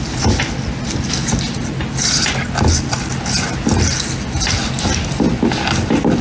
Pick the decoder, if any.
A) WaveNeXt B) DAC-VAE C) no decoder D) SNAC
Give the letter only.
C